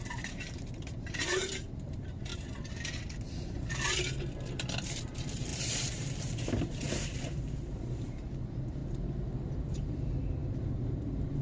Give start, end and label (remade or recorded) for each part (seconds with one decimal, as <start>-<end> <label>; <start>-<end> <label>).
0.0-2.3 remade; 2.3-5.0 recorded; 5.0-8.8 remade; 8.8-9.6 recorded; 9.6-11.4 remade